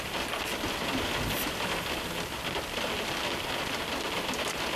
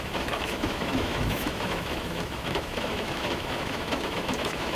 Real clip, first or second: first